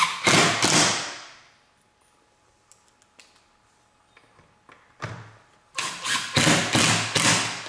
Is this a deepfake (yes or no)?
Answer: no